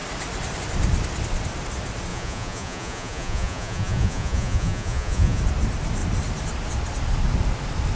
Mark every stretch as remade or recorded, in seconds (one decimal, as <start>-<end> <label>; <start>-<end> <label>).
0.0-2.1 recorded; 2.1-5.4 remade; 5.4-8.0 recorded